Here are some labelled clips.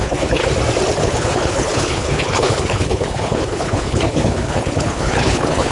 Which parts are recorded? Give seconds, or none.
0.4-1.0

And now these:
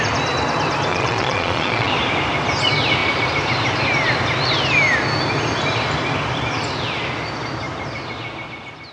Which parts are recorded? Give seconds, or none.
0.0-0.9; 1.9-8.9